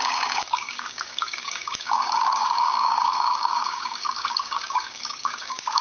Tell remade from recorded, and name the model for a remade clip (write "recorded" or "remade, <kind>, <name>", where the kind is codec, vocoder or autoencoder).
remade, codec, DAC